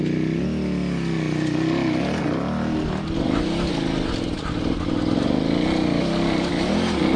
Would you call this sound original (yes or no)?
yes